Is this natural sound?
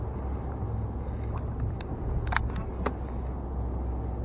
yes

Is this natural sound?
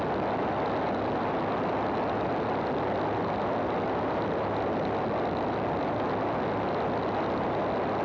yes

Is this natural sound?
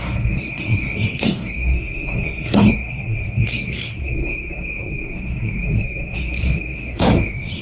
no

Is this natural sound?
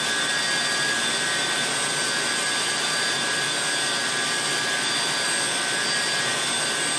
yes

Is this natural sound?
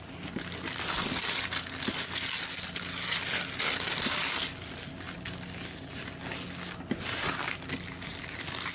yes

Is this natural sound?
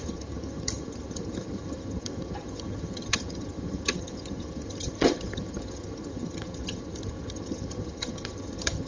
no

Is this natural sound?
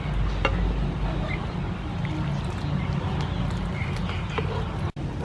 yes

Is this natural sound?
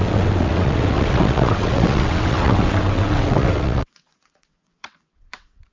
no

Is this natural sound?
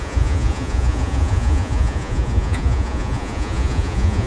no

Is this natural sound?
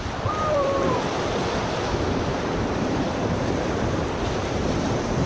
no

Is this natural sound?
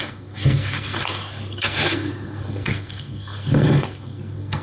no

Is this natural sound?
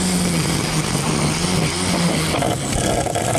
yes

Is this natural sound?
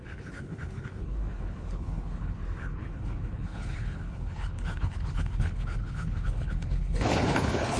no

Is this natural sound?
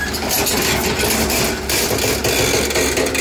yes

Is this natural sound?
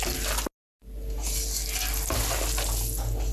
yes